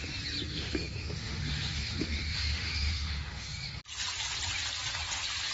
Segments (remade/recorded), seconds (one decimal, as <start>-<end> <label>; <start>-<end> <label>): 0.0-0.5 recorded; 0.5-3.8 remade; 3.8-5.5 recorded